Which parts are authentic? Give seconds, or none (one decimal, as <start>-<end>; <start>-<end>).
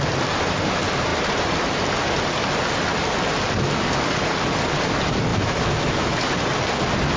0.0-5.3; 6.1-7.2